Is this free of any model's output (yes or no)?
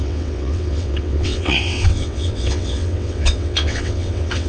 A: no